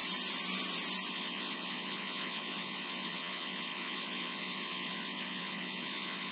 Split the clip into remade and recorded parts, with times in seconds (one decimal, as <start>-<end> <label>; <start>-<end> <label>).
0.0-1.1 recorded; 1.1-6.3 remade